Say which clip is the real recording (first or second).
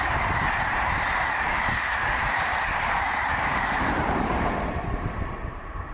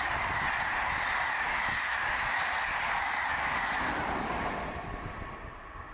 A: second